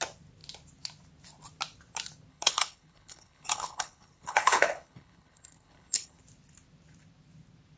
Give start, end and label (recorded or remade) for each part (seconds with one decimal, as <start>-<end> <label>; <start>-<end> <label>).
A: 0.0-2.3 recorded; 2.3-6.2 remade; 6.2-7.8 recorded